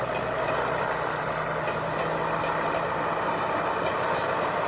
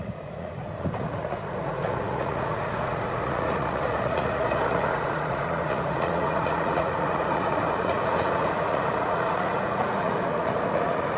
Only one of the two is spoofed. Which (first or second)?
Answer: second